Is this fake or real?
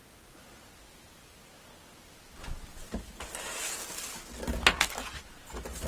real